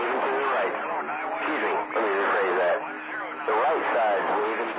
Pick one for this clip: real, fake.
real